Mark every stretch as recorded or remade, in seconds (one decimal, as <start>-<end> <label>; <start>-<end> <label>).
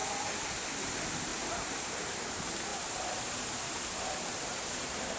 0.0-0.8 recorded; 0.8-5.2 remade